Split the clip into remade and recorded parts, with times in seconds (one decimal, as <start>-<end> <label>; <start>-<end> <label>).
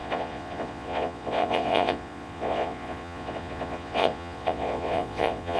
0.0-5.6 remade